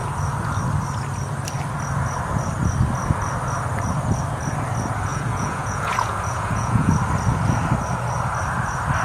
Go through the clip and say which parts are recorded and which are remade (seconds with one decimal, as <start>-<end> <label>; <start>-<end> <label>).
0.0-5.1 recorded; 5.1-6.9 remade; 6.9-9.0 recorded